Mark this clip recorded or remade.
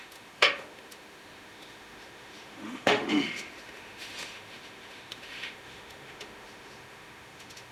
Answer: remade